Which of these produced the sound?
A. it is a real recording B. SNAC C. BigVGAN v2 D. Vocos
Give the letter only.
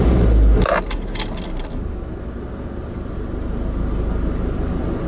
A